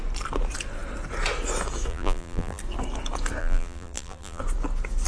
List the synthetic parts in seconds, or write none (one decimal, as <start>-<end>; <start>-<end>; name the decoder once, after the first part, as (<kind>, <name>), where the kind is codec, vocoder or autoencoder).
1.9-2.6 (vocoder, BigVGAN v2); 3.4-4.4